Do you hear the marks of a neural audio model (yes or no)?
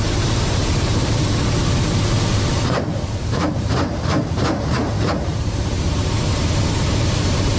yes